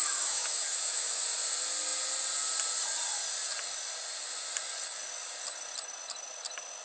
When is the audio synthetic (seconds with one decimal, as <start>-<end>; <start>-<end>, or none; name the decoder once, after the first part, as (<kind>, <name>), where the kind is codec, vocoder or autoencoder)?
0.0-1.2 (autoencoder, DAC-VAE)